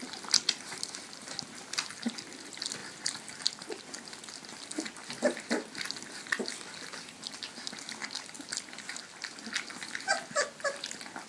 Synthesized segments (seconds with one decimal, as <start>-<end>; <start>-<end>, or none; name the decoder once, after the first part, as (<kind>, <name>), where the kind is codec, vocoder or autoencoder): none